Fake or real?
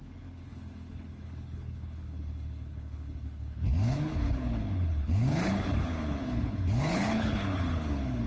fake